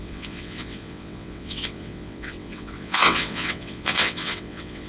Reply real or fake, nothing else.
fake